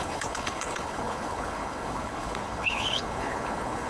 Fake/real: fake